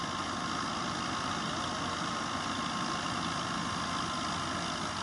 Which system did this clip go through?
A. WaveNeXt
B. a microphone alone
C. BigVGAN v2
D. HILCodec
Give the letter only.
B